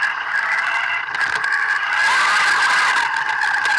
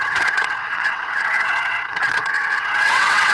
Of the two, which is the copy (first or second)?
second